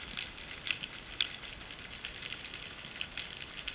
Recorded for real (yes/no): yes